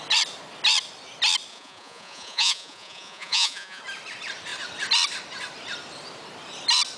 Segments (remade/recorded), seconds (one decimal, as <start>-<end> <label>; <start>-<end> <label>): 0.0-1.5 recorded; 1.5-3.8 remade; 3.8-7.0 recorded